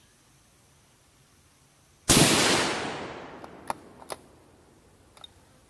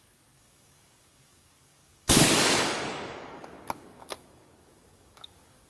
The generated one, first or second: second